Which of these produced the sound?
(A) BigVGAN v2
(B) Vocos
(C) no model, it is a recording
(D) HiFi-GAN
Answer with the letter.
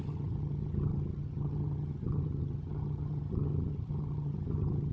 D